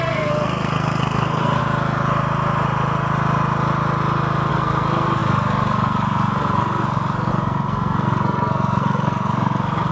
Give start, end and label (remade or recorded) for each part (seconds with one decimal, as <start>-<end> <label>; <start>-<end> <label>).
0.0-1.6 remade; 1.6-4.5 recorded; 4.5-9.9 remade